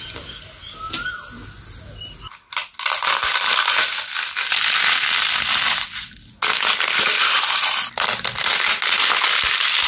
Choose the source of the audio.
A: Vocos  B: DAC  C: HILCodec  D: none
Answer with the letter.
D